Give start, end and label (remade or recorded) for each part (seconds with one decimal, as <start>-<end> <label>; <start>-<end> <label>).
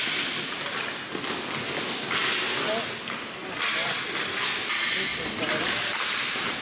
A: 0.0-6.6 recorded